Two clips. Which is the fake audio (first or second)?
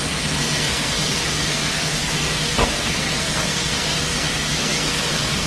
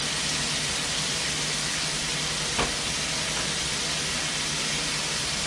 first